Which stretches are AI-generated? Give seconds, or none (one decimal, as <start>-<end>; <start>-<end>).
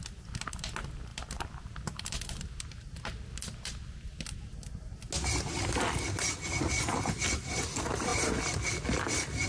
none